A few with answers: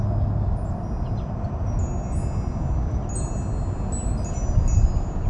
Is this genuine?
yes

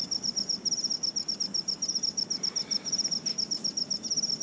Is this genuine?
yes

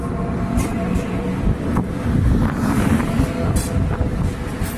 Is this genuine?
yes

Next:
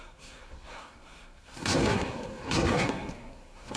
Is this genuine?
no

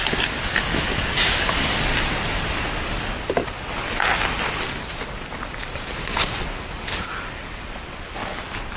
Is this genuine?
yes